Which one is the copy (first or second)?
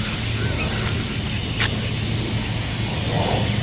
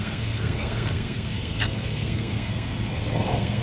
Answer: second